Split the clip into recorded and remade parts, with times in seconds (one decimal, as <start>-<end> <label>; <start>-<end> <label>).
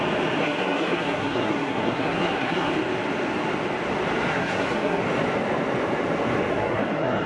0.0-0.4 recorded; 0.4-2.7 remade; 2.7-4.3 recorded; 4.3-5.0 remade; 5.0-6.5 recorded; 6.5-7.3 remade